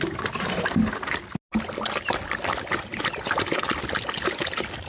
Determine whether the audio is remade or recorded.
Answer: recorded